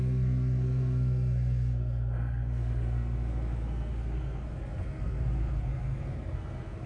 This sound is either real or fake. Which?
fake